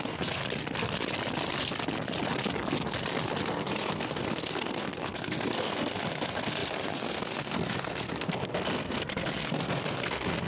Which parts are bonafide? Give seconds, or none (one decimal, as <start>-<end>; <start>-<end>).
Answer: 0.4-3.4